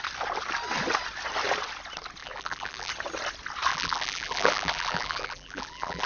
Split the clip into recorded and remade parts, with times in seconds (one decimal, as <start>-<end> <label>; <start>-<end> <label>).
0.0-2.2 recorded; 2.2-2.9 remade; 2.9-3.7 recorded; 3.7-6.1 remade